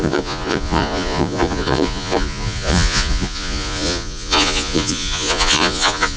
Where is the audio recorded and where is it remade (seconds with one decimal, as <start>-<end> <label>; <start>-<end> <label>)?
0.0-6.2 remade